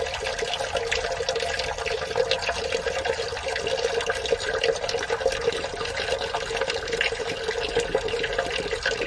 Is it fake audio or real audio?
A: real